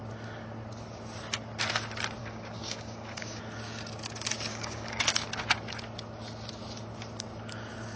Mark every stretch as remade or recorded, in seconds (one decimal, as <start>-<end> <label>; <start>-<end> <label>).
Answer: 0.0-2.2 recorded; 2.2-3.4 remade; 3.4-4.5 recorded; 4.5-5.0 remade; 5.0-8.0 recorded